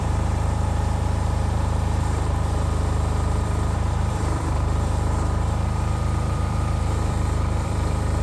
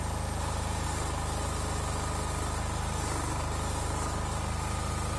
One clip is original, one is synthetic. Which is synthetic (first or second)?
first